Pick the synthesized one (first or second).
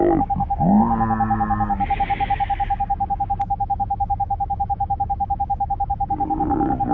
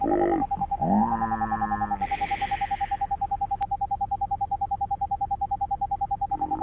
first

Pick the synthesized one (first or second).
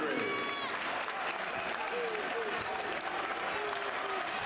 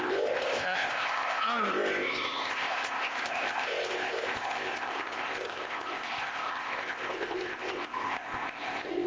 second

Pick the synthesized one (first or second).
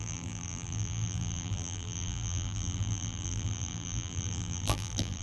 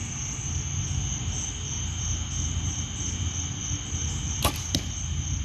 first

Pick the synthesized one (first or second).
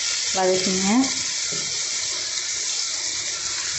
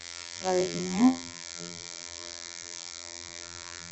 second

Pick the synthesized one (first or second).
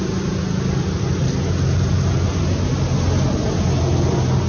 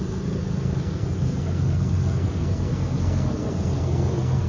second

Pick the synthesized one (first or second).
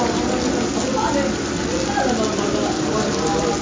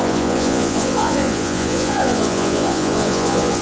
second